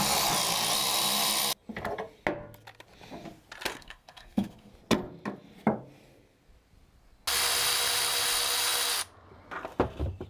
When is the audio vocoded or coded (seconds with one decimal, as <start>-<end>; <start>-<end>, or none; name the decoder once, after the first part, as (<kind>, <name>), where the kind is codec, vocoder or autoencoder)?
3.7-4.7 (codec, SNAC)